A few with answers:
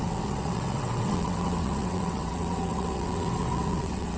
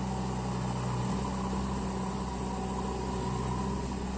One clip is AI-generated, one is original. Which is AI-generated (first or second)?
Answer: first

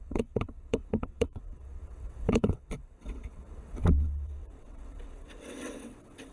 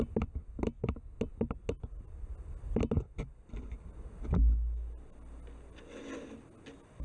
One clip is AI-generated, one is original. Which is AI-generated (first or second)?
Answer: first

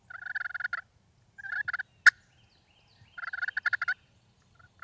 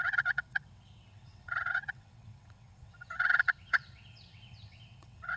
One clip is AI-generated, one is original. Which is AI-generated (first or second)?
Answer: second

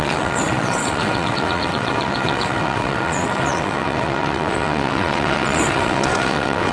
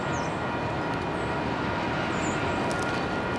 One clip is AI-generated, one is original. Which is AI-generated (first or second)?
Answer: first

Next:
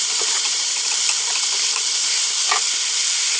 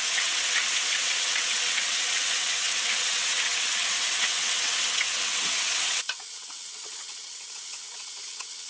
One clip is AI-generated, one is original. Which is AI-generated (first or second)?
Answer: second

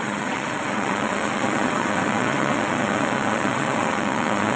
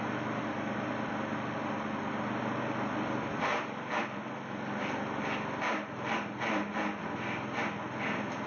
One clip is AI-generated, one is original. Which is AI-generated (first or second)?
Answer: first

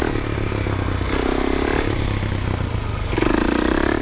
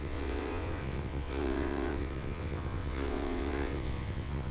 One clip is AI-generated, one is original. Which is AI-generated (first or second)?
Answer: second